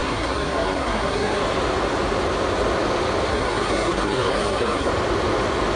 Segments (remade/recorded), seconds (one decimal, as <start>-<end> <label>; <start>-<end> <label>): 0.0-1.4 remade; 1.4-3.3 recorded; 3.3-4.9 remade; 4.9-5.8 recorded